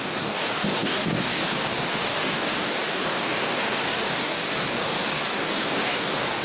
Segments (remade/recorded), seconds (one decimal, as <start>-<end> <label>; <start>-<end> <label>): 0.0-6.4 remade